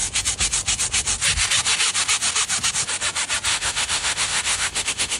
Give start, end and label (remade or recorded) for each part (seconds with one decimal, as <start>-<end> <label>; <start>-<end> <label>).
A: 0.0-3.5 recorded; 3.5-5.2 remade